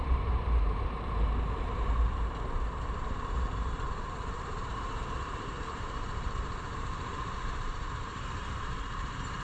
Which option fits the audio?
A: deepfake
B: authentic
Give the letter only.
A